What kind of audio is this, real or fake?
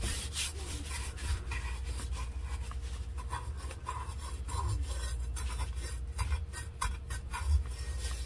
real